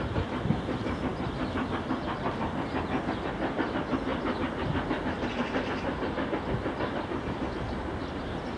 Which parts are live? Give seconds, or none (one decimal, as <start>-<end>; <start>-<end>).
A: 0.0-8.6